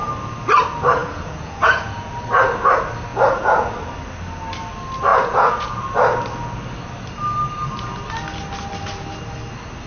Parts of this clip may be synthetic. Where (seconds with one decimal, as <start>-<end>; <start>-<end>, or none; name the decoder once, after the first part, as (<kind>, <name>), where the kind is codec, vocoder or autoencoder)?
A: 1.0-2.1 (vocoder, Vocos); 3.1-3.7; 5.1-5.8